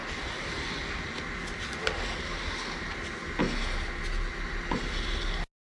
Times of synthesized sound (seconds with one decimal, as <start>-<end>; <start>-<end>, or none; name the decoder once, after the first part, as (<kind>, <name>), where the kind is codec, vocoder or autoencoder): none